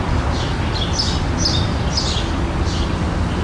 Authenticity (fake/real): real